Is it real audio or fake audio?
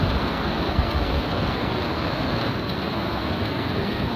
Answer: fake